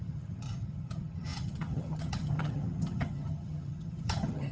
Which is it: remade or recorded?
remade